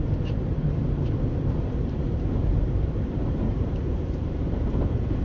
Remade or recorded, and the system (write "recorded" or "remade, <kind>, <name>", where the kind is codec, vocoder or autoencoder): remade, vocoder, BigVGAN v2